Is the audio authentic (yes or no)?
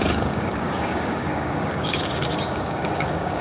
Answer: no